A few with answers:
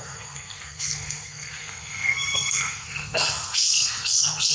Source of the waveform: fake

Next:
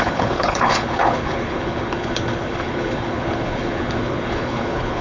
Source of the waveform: fake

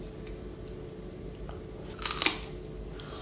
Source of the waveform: real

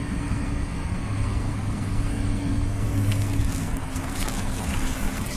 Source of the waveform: fake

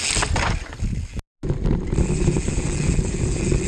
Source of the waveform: real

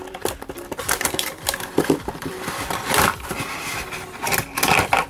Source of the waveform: fake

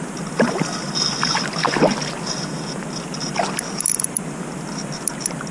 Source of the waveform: real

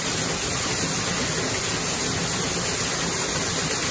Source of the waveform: real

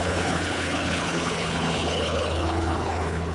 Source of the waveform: fake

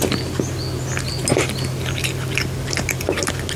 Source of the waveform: real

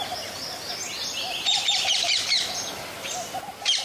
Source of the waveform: real